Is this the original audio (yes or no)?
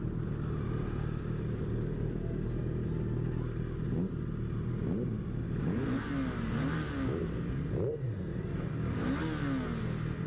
yes